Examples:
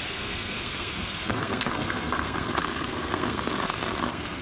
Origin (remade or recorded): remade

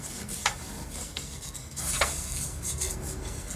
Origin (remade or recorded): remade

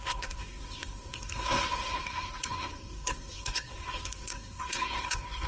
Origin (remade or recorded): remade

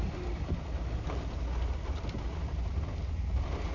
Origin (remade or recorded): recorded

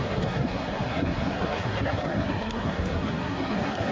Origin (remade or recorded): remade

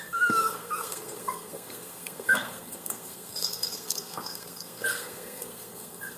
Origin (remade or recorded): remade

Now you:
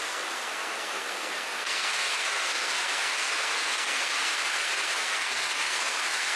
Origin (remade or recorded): remade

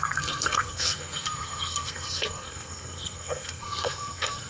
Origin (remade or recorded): remade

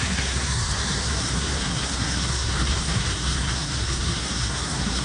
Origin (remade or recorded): remade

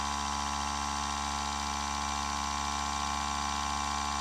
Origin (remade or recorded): recorded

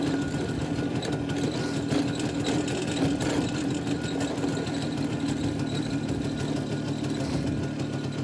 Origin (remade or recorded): recorded